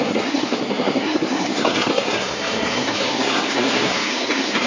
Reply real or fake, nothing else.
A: fake